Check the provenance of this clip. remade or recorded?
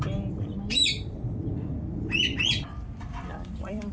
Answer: remade